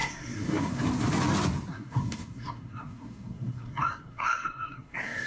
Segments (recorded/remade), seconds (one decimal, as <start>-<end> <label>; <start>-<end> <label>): 0.0-0.8 remade; 0.8-1.7 recorded; 1.7-5.3 remade